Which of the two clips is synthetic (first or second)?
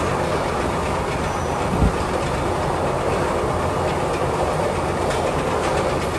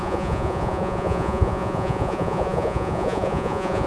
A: second